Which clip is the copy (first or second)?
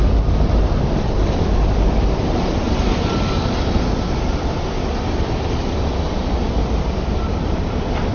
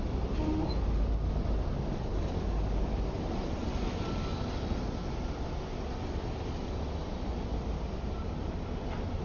first